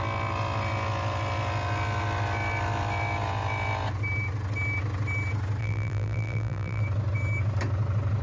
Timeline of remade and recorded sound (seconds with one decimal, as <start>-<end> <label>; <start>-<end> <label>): 0.0-5.6 recorded; 5.6-6.8 remade; 6.8-8.2 recorded